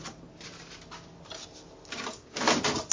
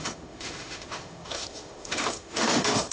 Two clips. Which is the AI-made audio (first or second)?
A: second